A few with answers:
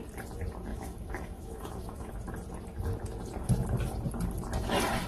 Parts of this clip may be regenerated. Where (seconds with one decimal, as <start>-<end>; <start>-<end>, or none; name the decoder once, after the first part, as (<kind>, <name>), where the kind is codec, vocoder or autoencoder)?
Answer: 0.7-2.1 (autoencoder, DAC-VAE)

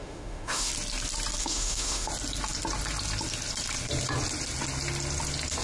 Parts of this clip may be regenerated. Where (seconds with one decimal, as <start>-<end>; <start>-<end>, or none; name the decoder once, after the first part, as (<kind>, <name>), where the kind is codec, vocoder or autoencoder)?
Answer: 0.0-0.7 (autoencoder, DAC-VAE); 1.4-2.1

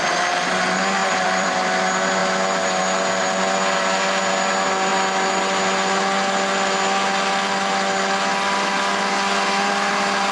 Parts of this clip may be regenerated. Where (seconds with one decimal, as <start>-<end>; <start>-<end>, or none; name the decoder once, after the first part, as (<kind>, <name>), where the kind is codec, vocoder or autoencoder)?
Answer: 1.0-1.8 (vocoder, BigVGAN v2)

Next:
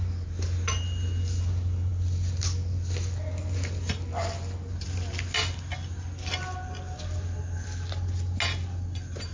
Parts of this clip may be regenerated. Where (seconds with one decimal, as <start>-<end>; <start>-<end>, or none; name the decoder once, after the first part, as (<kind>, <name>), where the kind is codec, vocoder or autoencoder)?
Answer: none

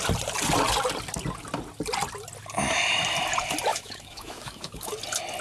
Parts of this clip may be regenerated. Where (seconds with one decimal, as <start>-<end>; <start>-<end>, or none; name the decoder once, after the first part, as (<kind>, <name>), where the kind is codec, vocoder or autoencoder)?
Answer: 3.7-4.9 (autoencoder, DAC-VAE)